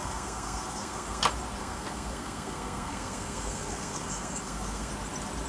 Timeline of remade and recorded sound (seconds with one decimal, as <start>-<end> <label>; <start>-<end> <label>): 0.0-1.2 remade; 1.2-1.6 recorded; 1.6-4.9 remade; 4.9-5.5 recorded